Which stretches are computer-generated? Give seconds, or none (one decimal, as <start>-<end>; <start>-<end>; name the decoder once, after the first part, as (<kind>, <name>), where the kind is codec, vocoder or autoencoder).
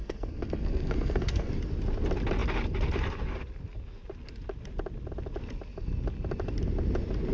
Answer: 0.0-1.5 (codec, SNAC)